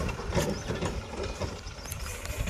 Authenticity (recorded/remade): recorded